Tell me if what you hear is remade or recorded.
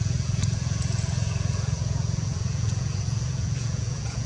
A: remade